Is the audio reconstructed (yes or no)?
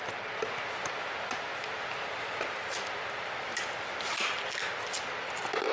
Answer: no